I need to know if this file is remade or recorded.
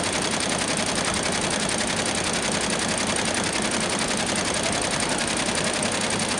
recorded